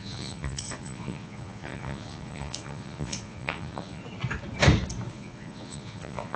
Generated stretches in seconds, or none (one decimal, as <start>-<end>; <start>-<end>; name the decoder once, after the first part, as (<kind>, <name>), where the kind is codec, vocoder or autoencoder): 0.0-4.0 (vocoder, Vocos); 5.1-6.4